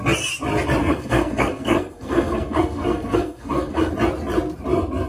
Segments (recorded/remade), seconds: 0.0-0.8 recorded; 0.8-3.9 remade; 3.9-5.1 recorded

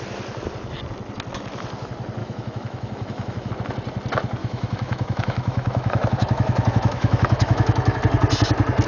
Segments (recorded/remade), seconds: 0.0-2.2 recorded; 2.2-3.5 remade; 3.5-4.4 recorded; 4.4-8.0 remade; 8.0-8.9 recorded

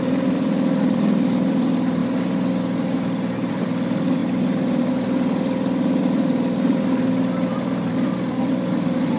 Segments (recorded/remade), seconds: 0.0-2.0 remade; 2.0-3.5 recorded; 3.5-4.2 remade; 4.2-4.9 recorded; 4.9-9.2 remade

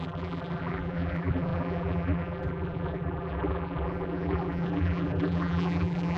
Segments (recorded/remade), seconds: 0.0-6.2 remade